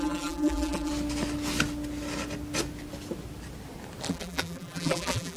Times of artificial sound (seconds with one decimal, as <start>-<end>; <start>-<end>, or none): 0.0-0.9; 4.1-5.4